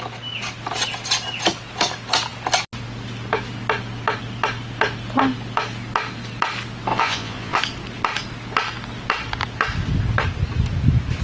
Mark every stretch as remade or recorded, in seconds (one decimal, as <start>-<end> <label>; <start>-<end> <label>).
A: 0.0-6.9 recorded; 6.9-7.6 remade; 7.6-11.2 recorded